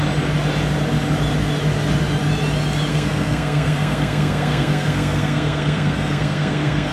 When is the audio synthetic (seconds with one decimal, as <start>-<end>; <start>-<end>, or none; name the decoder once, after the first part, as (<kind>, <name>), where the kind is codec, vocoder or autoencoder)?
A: 2.9-6.9 (codec, SNAC)